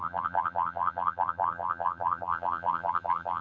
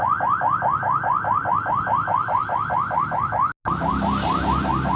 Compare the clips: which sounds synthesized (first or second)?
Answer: first